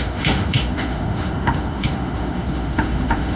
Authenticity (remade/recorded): remade